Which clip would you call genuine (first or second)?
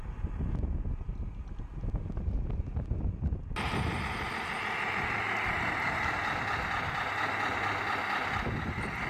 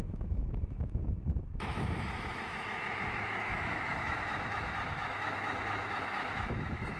first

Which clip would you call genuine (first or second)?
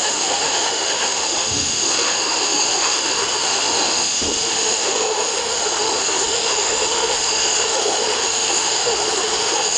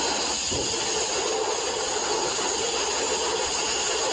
second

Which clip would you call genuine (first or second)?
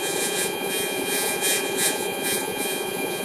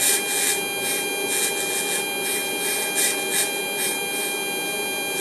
second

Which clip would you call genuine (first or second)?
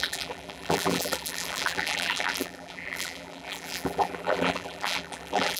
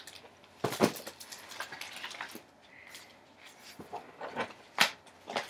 second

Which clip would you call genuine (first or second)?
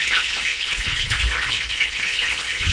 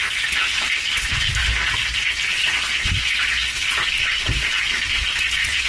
second